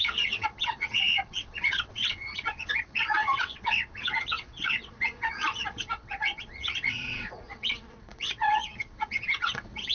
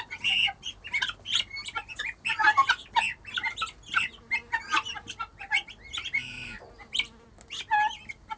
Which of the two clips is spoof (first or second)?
first